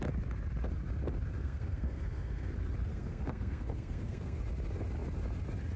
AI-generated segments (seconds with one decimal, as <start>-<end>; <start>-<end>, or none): 1.4-2.5; 2.9-4.4